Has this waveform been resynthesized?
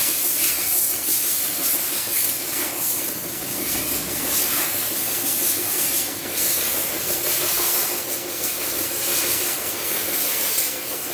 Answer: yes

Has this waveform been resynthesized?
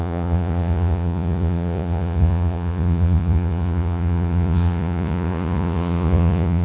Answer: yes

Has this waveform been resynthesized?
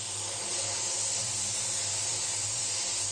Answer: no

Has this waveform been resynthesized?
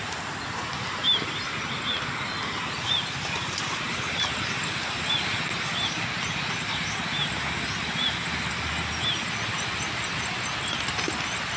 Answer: no